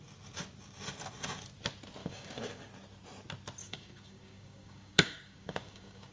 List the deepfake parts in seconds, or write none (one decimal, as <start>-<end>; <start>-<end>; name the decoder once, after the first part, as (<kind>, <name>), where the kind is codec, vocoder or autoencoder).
2.0-2.7 (codec, DAC); 3.6-6.1